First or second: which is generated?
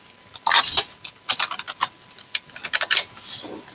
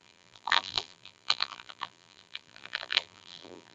second